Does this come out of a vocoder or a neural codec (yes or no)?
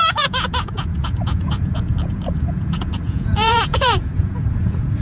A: yes